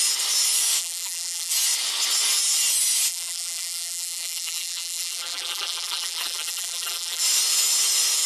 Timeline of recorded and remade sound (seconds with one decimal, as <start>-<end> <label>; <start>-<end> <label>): 0.0-0.8 recorded; 0.8-1.5 remade; 1.5-3.1 recorded; 3.1-7.2 remade; 7.2-8.3 recorded